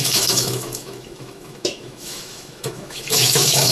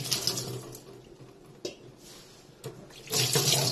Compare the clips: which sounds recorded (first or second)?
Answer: second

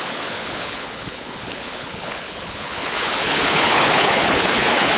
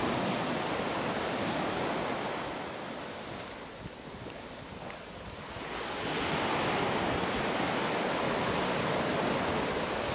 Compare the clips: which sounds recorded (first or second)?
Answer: second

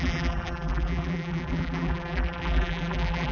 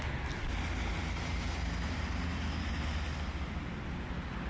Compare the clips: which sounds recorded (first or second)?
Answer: second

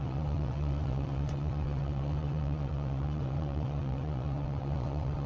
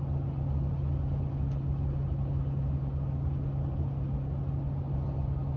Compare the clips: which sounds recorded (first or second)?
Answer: second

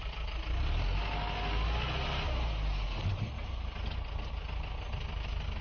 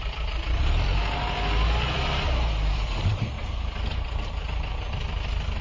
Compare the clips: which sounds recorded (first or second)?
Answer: first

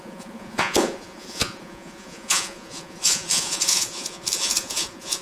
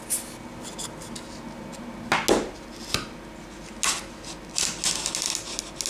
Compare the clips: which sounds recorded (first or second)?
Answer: second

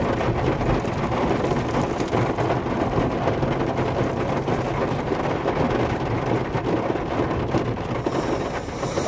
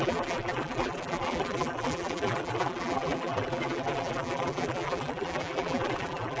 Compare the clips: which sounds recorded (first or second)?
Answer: first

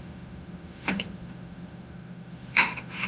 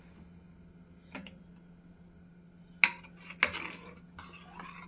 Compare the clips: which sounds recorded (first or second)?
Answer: second